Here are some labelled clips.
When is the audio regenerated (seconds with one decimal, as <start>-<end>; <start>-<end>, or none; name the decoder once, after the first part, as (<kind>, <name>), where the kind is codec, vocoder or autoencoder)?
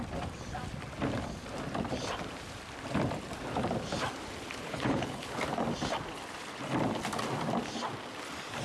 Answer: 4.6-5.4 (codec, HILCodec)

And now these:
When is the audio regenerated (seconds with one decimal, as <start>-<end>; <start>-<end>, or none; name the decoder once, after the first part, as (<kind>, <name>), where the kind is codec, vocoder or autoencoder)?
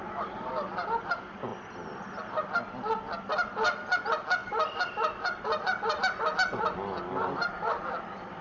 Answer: none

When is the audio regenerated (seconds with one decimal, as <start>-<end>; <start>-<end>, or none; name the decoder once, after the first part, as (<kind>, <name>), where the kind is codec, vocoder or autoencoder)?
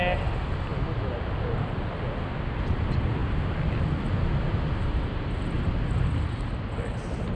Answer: none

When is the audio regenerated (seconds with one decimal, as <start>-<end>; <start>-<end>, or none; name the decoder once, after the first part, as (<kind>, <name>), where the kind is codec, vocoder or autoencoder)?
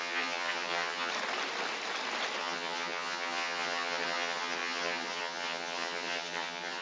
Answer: 0.0-1.1 (vocoder, HiFi-GAN); 2.4-6.8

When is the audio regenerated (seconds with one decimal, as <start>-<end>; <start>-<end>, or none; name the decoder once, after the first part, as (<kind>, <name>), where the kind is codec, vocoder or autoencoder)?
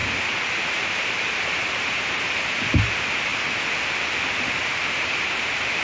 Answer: 0.5-3.3 (vocoder, BigVGAN v2)